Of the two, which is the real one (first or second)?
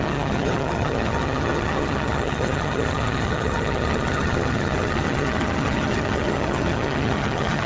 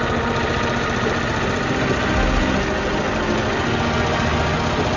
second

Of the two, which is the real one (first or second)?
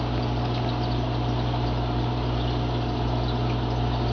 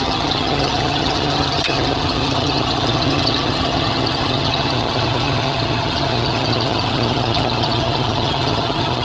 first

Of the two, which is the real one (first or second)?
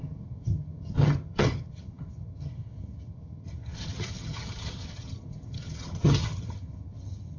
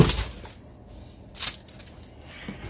second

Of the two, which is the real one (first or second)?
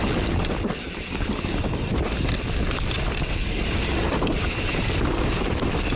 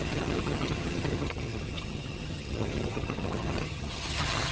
first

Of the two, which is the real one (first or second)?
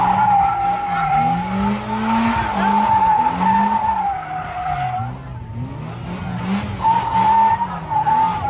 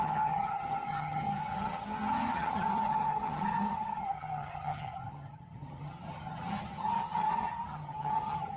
first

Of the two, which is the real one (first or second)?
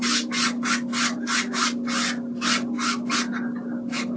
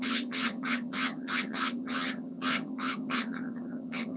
first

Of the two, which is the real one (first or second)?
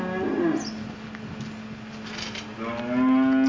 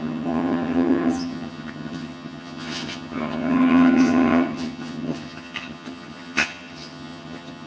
first